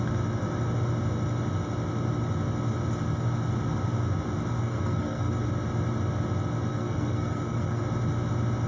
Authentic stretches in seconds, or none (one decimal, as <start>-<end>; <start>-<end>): 0.0-4.6; 5.3-6.7; 7.8-8.7